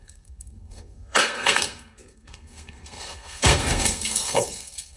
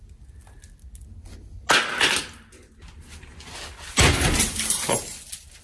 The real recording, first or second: second